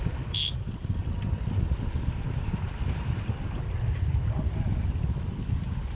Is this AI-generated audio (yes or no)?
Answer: no